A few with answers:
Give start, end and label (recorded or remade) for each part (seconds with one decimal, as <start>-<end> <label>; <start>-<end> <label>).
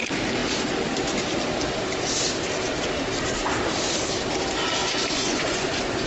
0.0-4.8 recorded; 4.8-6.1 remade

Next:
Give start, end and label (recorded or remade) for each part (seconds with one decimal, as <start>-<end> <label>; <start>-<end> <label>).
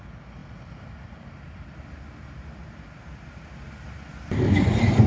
0.0-5.1 recorded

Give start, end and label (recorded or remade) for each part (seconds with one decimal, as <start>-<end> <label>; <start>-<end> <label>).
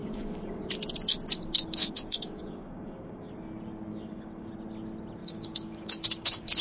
0.0-0.6 remade; 0.6-1.8 recorded; 1.8-3.3 remade; 3.3-3.9 recorded; 3.9-4.5 remade; 4.5-5.2 recorded; 5.2-6.6 remade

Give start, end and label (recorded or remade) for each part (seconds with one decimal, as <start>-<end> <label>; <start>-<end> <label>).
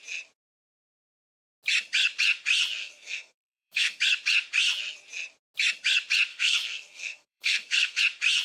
0.0-2.8 recorded; 2.8-4.0 remade; 4.0-6.3 recorded; 6.3-8.0 remade; 8.0-8.4 recorded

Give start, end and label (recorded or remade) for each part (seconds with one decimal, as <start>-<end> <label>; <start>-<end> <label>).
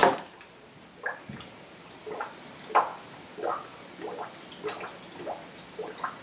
0.0-2.2 recorded; 2.2-2.9 remade; 2.9-6.2 recorded